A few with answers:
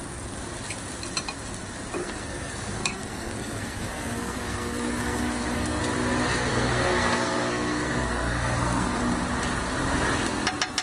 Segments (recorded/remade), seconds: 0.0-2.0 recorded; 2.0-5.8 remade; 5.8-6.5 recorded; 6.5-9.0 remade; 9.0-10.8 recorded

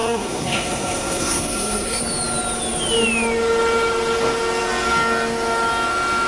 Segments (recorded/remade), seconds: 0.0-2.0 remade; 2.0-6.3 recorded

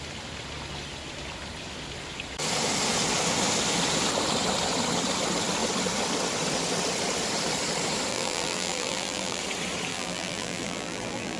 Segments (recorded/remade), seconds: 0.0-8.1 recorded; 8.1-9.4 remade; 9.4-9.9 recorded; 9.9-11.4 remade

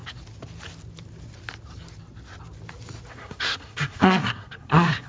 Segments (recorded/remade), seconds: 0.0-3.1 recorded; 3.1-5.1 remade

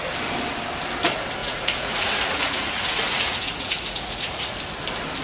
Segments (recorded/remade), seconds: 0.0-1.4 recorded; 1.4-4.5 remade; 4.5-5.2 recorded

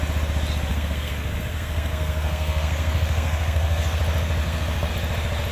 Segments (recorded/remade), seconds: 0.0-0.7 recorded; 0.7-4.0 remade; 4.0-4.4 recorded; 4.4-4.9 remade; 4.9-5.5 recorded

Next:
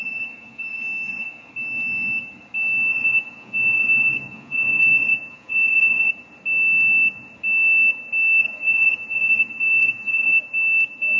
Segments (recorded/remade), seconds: 0.0-1.5 remade; 1.5-2.9 recorded; 2.9-6.1 remade; 6.1-8.4 recorded; 8.4-10.4 remade; 10.4-11.2 recorded

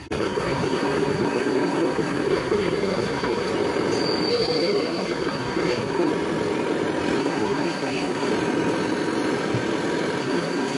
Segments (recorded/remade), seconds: 0.0-3.5 remade; 3.5-4.3 recorded; 4.3-6.1 remade; 6.1-7.2 recorded; 7.2-8.3 remade; 8.3-10.2 recorded; 10.2-10.8 remade